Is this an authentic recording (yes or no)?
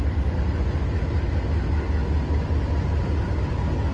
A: yes